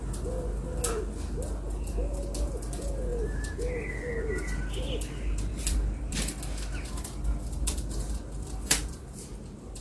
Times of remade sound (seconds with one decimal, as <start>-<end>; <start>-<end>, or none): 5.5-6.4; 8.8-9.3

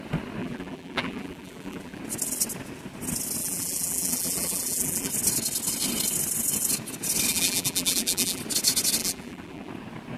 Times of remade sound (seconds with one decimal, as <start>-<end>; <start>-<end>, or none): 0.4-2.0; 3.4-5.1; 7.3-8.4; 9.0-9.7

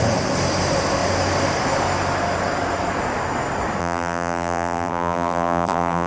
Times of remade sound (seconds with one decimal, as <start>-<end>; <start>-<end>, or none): 3.8-6.1

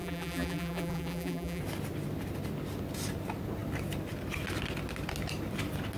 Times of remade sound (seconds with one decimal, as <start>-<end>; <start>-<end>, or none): 0.0-1.6

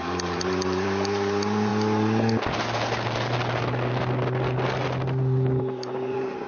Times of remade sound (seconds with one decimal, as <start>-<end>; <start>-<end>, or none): 0.0-1.7; 5.6-6.5

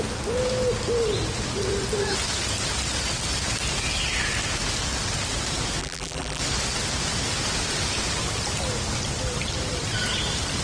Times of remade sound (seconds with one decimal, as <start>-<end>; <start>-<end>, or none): 5.8-6.4

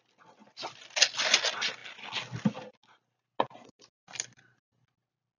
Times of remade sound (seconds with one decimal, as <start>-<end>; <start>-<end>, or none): none

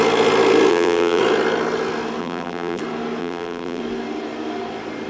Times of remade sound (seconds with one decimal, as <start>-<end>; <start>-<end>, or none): 0.7-1.2; 2.2-2.8; 3.2-3.8